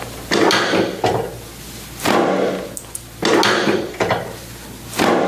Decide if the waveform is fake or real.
real